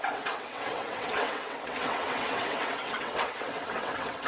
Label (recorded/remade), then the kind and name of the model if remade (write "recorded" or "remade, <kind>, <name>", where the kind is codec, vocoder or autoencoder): remade, vocoder, WaveNeXt